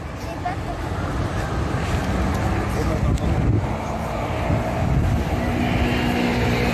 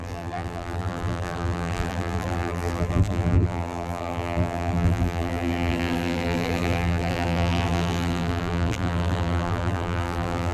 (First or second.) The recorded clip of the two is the first